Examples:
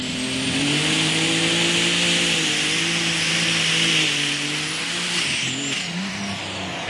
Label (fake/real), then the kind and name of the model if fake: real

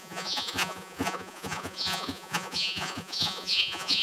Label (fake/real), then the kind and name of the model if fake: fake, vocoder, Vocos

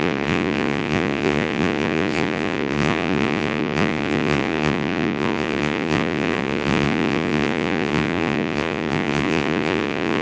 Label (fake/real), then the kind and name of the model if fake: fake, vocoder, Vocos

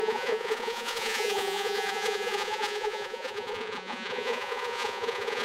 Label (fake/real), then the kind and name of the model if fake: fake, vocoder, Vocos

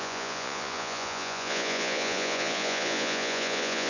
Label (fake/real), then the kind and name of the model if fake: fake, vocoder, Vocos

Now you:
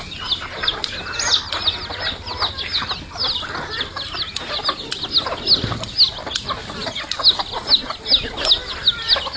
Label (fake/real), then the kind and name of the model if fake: real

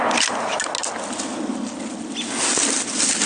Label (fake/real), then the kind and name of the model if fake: real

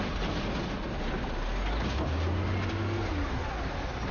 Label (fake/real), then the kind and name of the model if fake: real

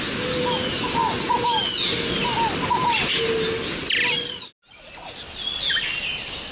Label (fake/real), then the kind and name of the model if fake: real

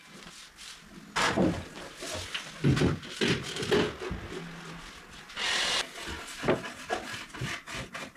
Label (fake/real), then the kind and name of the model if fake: real